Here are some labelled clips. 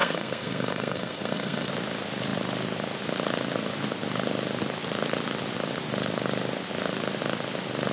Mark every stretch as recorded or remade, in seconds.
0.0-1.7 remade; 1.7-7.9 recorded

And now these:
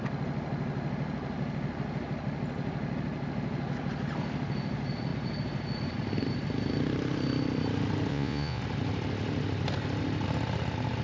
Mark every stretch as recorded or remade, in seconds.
0.0-8.1 recorded; 8.1-8.6 remade; 8.6-11.0 recorded

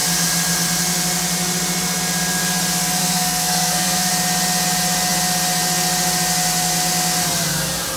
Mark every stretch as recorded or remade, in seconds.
0.0-3.0 recorded; 3.0-4.1 remade; 4.1-8.0 recorded

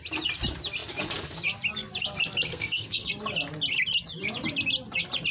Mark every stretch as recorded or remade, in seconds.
0.0-2.5 recorded; 2.5-3.1 remade; 3.1-5.3 recorded

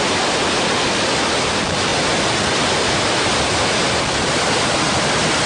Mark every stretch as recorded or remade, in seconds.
0.0-5.5 recorded

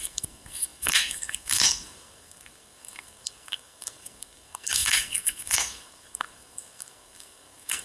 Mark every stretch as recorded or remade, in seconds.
0.0-7.8 remade

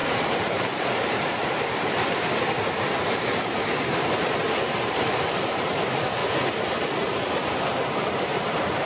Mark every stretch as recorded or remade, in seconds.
0.0-6.2 remade; 6.2-7.5 recorded; 7.5-8.9 remade